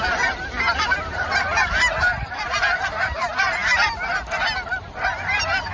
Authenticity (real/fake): fake